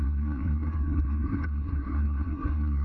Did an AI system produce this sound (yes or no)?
yes